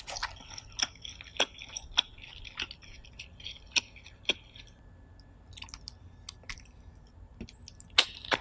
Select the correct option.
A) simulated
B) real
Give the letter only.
B